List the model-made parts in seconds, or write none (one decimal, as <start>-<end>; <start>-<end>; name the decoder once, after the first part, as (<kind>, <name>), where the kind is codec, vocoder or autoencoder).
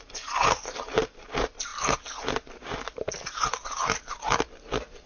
none